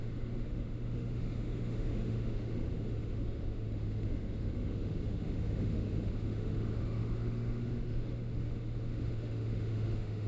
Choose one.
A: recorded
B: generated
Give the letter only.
B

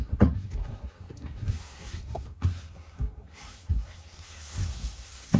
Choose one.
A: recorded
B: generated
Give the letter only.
B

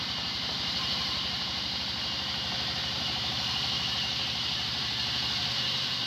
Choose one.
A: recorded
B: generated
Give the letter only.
B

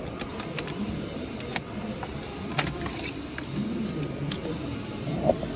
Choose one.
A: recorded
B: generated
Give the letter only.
B